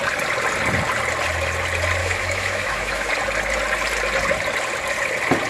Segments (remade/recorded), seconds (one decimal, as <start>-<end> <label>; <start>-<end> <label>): 0.0-2.0 recorded; 2.0-3.1 remade; 3.1-5.5 recorded